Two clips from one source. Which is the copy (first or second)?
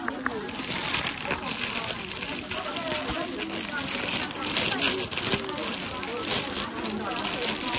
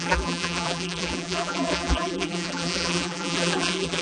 second